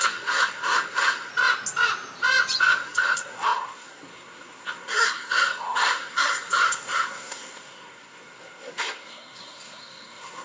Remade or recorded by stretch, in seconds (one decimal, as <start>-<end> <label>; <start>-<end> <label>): 0.0-1.3 remade; 1.3-2.6 recorded; 2.6-10.4 remade